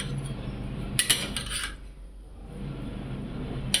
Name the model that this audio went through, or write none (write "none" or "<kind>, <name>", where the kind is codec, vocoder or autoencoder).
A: none